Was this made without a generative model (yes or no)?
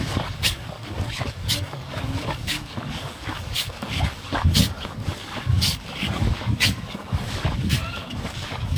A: no